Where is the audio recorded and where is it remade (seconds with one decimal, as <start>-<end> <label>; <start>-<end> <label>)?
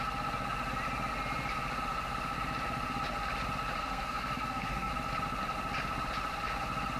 0.0-3.8 recorded; 3.8-4.9 remade; 4.9-7.0 recorded